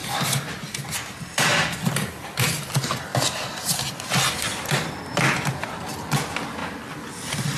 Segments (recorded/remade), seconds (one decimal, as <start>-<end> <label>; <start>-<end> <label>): 0.0-2.4 remade; 2.4-3.1 recorded; 3.1-3.6 remade; 3.6-7.6 recorded